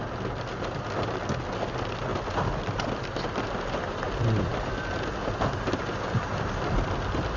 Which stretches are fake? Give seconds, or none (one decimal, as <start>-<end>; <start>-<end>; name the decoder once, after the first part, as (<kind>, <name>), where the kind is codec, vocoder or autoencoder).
2.1-6.5 (vocoder, BigVGAN v2)